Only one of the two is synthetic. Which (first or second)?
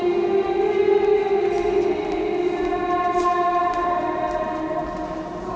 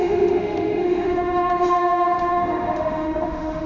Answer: second